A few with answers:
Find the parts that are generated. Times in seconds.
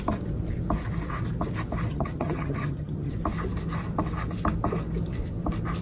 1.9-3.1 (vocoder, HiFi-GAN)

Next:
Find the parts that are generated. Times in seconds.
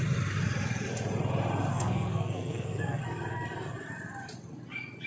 1.7-3.0 (codec, SNAC)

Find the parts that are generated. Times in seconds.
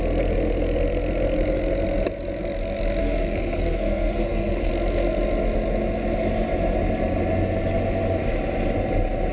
3.0-4.7 (codec, SNAC)